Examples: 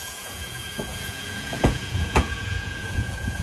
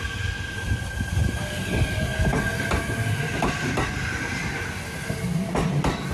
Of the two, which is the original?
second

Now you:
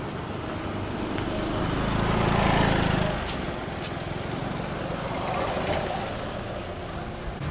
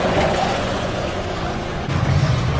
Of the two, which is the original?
first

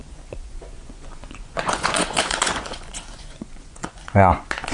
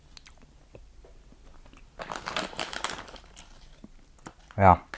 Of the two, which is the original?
second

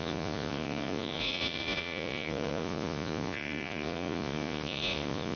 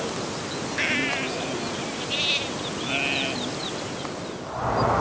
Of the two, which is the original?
second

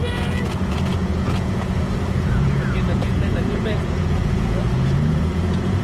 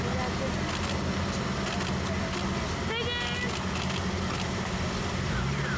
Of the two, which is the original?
second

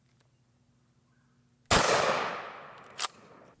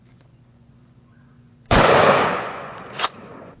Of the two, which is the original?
first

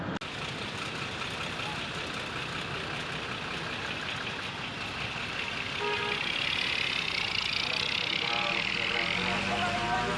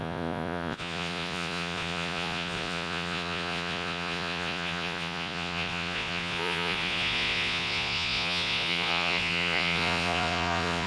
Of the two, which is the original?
first